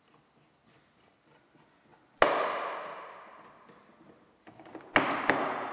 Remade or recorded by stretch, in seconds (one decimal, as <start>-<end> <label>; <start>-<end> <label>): 0.0-5.7 recorded